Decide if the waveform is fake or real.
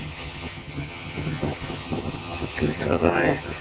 fake